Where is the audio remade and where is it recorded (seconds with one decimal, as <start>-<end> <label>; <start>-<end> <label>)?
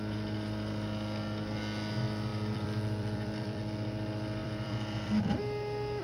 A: 0.0-2.3 recorded; 2.3-3.6 remade; 3.6-4.4 recorded; 4.4-5.2 remade; 5.2-6.0 recorded